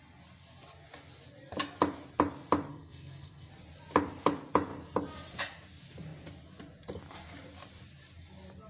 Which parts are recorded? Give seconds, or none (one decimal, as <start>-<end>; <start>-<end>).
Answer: 0.0-2.7; 3.5-8.7